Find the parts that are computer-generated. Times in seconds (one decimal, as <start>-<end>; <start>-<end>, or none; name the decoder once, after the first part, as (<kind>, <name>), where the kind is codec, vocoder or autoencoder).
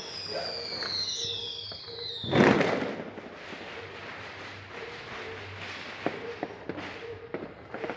none